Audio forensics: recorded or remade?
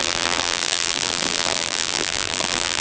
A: remade